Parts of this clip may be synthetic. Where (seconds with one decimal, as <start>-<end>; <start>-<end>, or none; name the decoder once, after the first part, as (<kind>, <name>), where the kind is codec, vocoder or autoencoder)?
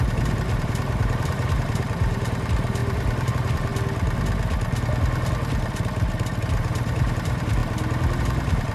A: 0.0-3.7 (vocoder, BigVGAN v2); 6.4-7.6; 8.2-8.7